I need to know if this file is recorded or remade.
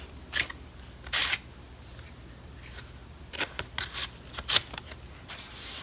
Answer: recorded